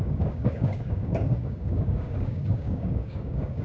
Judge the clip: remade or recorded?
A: remade